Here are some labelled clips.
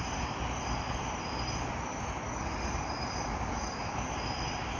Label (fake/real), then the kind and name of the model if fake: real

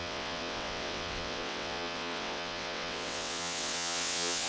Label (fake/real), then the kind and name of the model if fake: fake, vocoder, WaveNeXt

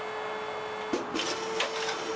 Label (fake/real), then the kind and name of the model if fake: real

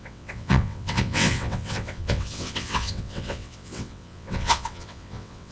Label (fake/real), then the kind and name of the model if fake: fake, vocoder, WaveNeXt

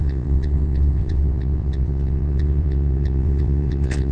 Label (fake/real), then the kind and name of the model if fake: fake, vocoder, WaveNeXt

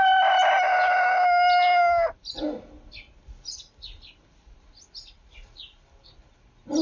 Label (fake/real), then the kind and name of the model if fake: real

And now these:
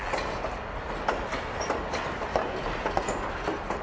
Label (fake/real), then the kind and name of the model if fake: real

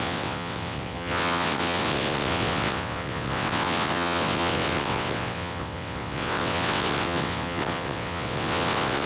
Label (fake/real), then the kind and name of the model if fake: fake, vocoder, WaveNeXt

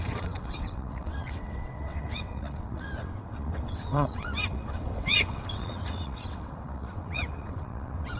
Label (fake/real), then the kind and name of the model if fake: fake, vocoder, WaveNeXt